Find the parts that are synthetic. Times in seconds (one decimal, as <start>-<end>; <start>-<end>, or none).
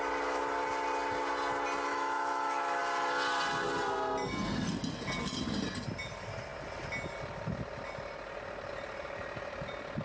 1.9-2.8